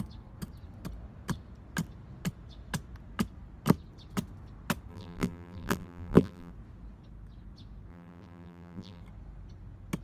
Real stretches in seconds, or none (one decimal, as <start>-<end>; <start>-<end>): 0.0-4.9; 6.5-7.9; 9.0-10.0